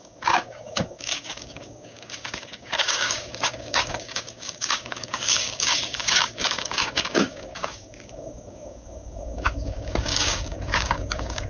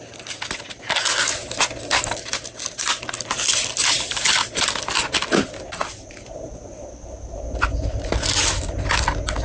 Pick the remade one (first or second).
first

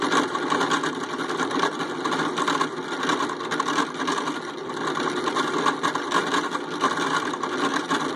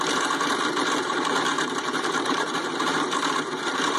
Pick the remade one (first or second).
second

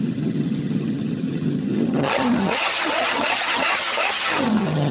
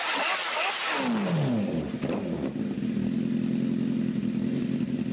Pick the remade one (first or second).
first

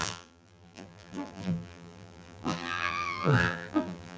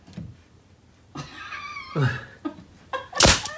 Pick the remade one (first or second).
first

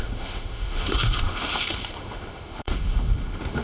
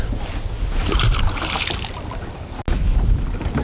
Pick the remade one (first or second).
first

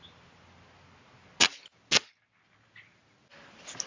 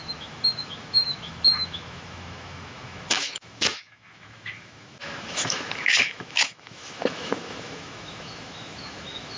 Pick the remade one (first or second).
second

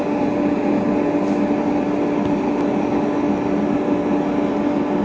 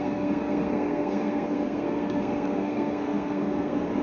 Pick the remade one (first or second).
second